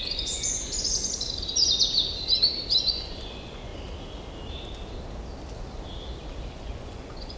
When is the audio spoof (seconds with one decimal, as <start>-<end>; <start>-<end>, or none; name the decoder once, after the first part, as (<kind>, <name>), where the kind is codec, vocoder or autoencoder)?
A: 0.0-1.0 (vocoder, Vocos); 2.9-3.7; 6.5-7.4